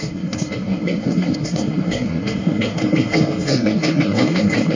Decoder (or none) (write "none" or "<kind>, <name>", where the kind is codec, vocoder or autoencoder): codec, SNAC